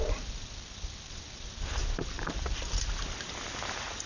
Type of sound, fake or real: real